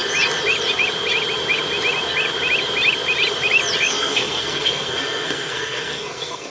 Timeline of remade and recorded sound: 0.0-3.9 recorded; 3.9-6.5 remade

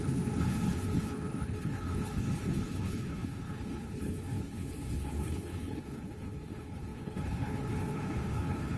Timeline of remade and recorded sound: 0.0-8.8 remade

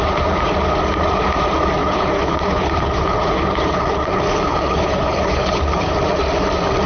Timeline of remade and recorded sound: 0.0-1.8 recorded; 1.8-5.9 remade; 5.9-6.9 recorded

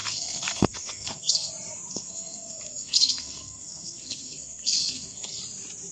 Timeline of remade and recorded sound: 0.0-1.5 remade; 1.5-1.9 recorded; 1.9-5.4 remade; 5.4-5.9 recorded

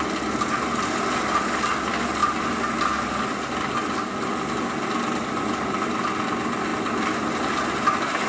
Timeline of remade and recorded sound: 0.0-8.3 recorded

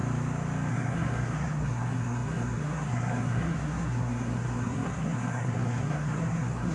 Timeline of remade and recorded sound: 0.0-0.7 recorded; 0.7-6.7 remade

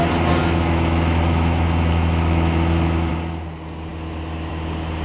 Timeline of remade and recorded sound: 0.0-0.4 recorded; 0.4-3.1 remade; 3.1-5.0 recorded